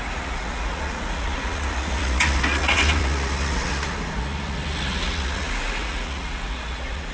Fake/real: fake